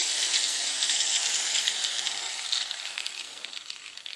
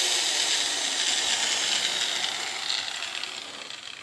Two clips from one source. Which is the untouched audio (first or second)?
second